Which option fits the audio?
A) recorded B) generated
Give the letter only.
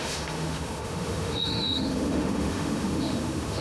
B